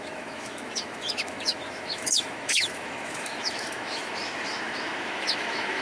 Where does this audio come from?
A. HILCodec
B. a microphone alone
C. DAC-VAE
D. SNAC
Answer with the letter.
C